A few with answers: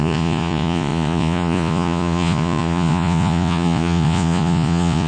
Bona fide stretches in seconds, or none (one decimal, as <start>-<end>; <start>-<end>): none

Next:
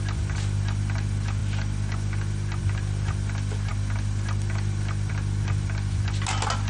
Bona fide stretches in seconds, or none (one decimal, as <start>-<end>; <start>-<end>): 0.0-6.7

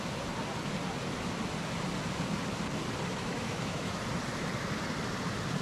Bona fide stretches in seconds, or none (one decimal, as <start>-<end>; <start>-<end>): 0.0-3.1; 4.0-5.6